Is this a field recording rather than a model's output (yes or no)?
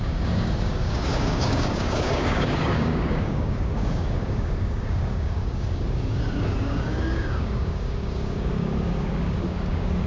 no